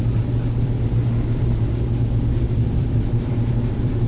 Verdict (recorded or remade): remade